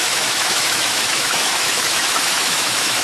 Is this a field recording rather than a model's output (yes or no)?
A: no